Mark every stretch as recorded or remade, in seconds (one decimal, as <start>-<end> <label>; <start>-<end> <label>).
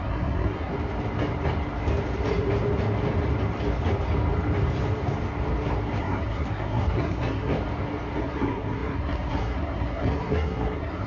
0.0-0.7 remade; 0.7-6.0 recorded; 6.0-7.5 remade; 7.5-8.2 recorded; 8.2-11.1 remade